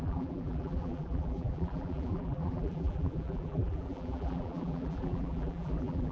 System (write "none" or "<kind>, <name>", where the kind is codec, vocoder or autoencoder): vocoder, BigVGAN v2